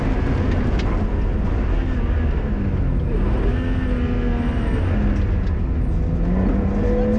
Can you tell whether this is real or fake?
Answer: real